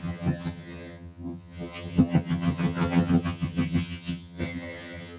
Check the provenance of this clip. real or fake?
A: fake